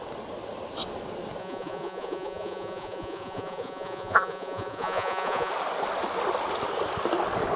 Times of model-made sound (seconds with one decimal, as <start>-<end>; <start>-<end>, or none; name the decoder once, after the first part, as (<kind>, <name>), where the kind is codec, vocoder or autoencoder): 1.4-5.5 (vocoder, Vocos)